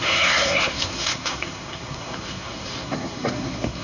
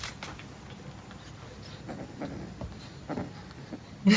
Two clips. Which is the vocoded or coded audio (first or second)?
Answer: first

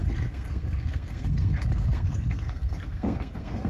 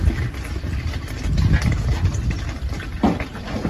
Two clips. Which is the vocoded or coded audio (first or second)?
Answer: first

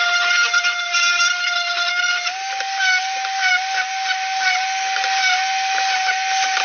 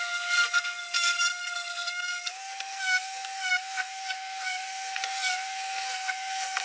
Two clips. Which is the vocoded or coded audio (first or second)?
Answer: second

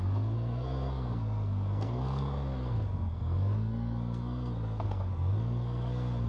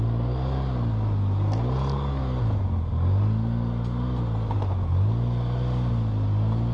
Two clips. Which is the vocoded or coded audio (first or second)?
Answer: first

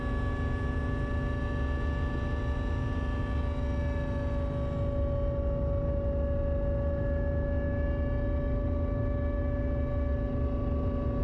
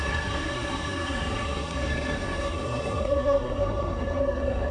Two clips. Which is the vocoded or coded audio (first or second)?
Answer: second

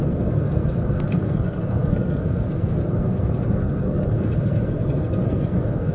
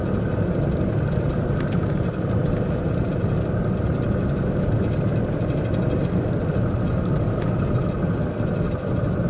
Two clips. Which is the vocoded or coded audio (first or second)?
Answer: first